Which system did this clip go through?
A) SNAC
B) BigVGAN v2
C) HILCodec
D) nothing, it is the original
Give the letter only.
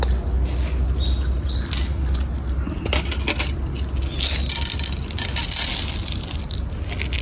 D